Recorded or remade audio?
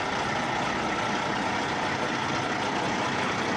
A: recorded